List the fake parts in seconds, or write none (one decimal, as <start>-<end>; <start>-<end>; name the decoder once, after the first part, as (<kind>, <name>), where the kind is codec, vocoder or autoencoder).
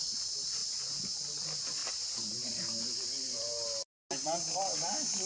none